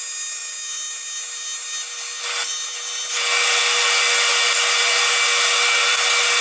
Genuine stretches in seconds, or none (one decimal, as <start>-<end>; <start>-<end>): 0.0-6.4